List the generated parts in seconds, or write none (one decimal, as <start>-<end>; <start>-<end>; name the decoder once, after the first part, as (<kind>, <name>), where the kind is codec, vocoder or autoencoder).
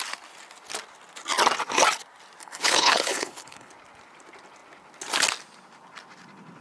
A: 2.4-3.7 (codec, HILCodec)